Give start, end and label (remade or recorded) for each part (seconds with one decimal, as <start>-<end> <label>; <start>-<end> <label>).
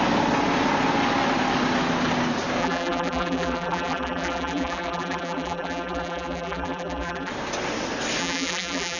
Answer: 0.0-2.6 recorded; 2.6-7.3 remade; 7.3-8.2 recorded; 8.2-9.0 remade